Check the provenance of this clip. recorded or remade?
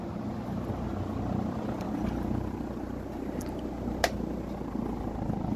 recorded